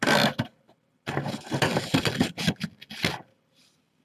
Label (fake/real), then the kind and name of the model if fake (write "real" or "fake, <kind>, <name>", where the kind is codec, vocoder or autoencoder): real